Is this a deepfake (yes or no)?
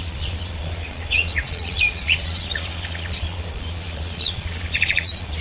yes